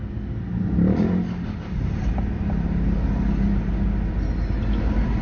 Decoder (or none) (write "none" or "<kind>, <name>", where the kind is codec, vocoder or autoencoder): none